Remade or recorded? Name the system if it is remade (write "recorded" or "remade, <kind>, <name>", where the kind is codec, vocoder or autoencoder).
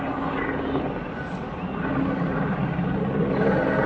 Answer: recorded